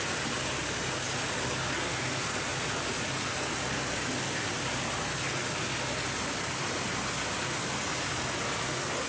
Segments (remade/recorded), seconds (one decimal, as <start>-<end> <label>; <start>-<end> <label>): 0.0-9.1 recorded